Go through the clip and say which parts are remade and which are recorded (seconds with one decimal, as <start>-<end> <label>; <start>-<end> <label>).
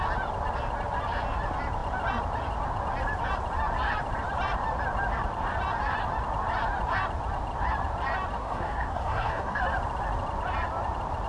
0.0-8.4 recorded; 8.4-9.6 remade; 9.6-11.3 recorded